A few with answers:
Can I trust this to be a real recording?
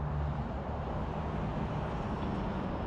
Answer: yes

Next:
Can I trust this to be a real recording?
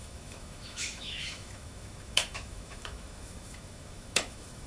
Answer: no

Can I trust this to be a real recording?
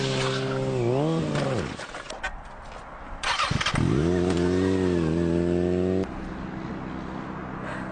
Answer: yes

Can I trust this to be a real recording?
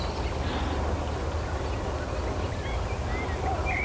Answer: yes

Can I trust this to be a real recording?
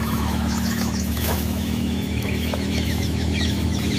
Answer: no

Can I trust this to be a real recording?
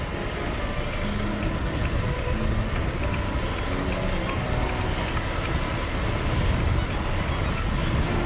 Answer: yes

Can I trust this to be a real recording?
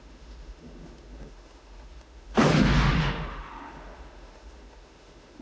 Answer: no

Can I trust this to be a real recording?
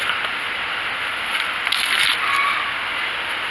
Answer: yes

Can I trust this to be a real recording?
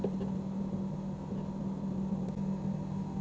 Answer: yes